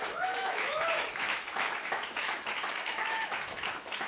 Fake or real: fake